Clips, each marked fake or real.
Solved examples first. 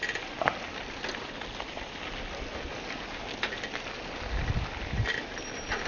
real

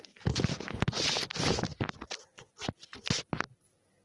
real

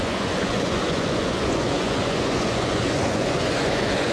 fake